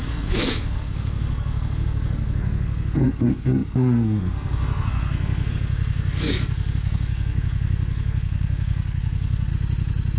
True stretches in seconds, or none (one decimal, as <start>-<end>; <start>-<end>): 9.5-10.2